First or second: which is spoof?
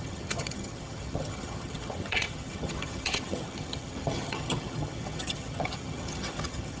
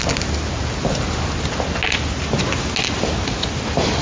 first